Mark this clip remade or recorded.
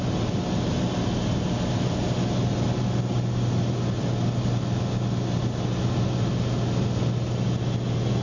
recorded